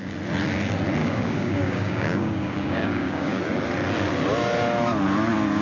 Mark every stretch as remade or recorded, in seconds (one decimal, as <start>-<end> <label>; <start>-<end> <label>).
0.0-1.0 recorded; 1.0-3.4 remade; 3.4-5.6 recorded